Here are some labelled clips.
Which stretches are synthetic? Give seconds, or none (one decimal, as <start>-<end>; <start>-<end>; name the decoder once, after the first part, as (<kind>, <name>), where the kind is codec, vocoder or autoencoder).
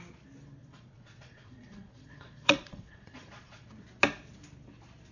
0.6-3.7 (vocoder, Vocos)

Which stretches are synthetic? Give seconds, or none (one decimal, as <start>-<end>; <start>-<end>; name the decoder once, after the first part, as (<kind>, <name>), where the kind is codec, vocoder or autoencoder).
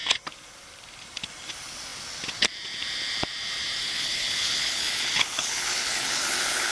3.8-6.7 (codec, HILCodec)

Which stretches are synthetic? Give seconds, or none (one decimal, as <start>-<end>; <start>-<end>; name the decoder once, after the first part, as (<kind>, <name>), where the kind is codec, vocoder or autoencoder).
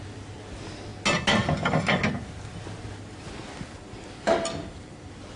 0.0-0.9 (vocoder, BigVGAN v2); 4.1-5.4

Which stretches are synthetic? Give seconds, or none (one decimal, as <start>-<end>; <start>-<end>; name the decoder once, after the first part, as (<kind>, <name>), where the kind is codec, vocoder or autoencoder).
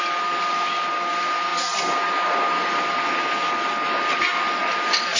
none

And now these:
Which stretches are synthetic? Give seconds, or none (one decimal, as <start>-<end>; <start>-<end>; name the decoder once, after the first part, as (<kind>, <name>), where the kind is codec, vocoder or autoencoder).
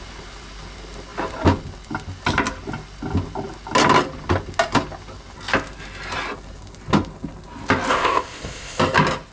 7.9-8.8 (codec, ZipCodec)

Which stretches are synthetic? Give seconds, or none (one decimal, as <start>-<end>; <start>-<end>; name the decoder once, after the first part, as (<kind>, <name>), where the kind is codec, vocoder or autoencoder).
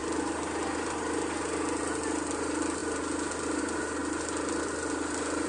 none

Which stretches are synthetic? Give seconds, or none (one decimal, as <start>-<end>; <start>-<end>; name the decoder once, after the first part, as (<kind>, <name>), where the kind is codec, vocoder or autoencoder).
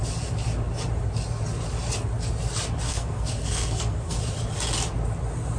2.9-4.2 (codec, SNAC)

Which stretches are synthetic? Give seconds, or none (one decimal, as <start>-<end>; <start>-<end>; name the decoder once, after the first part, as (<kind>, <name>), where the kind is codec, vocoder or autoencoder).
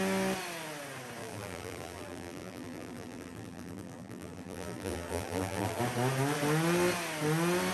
1.2-5.8 (vocoder, BigVGAN v2)